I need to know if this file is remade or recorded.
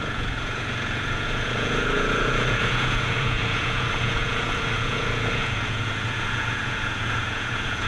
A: remade